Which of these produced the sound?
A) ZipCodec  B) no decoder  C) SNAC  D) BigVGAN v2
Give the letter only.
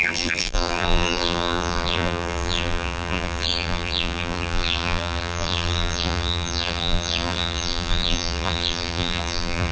D